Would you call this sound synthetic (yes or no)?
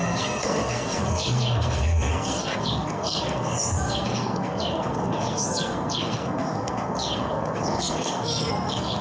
yes